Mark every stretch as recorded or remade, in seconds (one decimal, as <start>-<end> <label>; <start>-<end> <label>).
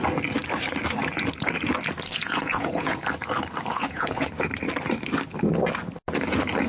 0.0-2.1 recorded; 2.1-3.0 remade; 3.0-3.7 recorded; 3.7-4.4 remade; 4.4-6.7 recorded